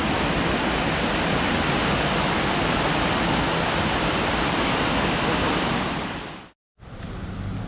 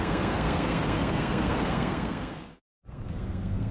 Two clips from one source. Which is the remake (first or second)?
second